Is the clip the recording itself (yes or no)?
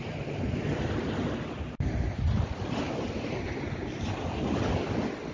yes